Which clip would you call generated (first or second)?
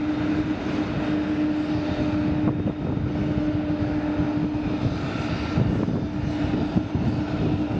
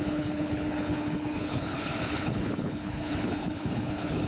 second